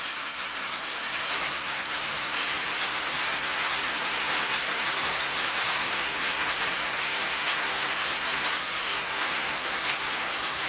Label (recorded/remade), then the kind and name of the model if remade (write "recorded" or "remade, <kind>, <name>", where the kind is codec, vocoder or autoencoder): remade, codec, SNAC